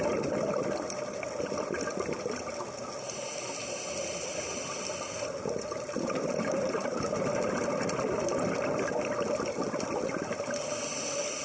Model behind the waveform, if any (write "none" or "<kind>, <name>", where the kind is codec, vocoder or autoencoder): none